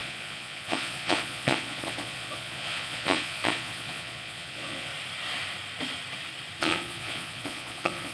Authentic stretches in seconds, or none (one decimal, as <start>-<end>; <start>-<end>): 4.9-6.6